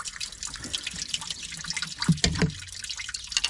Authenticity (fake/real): real